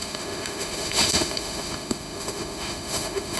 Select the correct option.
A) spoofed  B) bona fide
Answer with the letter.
A